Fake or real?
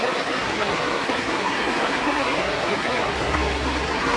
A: fake